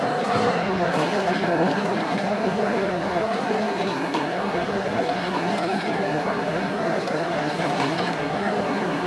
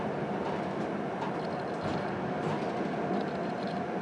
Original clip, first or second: second